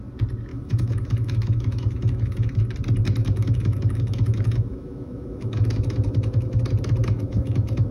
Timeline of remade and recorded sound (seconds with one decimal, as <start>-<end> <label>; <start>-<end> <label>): 0.0-0.5 recorded; 0.5-2.6 remade; 2.6-3.2 recorded; 3.2-6.6 remade; 6.6-7.0 recorded; 7.0-7.9 remade